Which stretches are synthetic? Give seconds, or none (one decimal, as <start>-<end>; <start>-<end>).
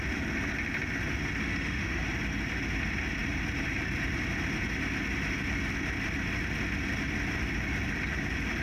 1.4-2.0